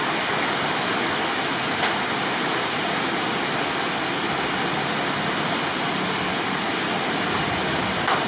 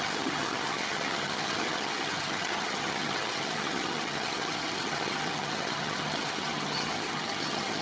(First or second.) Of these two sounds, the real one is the first